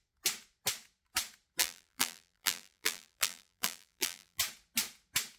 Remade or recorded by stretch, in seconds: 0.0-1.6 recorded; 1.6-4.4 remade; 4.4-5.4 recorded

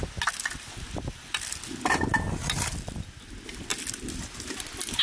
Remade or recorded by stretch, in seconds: 0.0-5.0 recorded

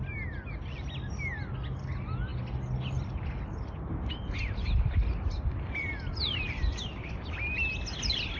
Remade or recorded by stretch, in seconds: 0.0-8.4 recorded

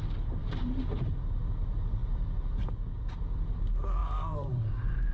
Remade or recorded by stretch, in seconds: 0.0-0.4 recorded; 0.4-1.0 remade; 1.0-4.0 recorded; 4.0-5.1 remade